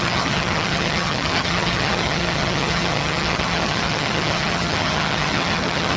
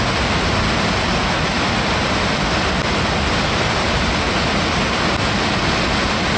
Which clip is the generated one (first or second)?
first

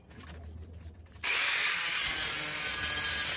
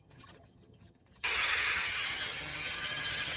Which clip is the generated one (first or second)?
second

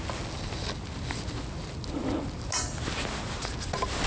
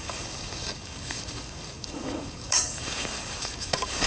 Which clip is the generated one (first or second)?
second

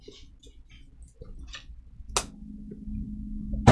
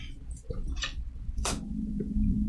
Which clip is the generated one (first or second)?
second